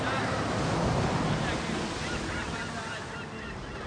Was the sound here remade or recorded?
recorded